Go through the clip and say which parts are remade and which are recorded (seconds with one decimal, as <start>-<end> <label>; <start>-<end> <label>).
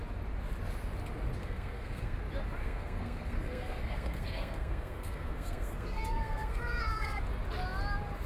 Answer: 0.0-1.4 recorded; 1.4-2.2 remade; 2.2-2.6 recorded; 2.6-7.2 remade; 7.2-8.3 recorded